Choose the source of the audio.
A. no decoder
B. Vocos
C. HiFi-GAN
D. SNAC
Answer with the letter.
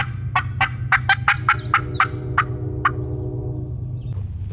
A